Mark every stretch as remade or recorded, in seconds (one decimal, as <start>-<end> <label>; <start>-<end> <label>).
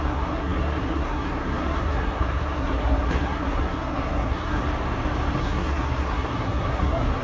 0.0-4.6 remade; 4.6-5.4 recorded; 5.4-7.2 remade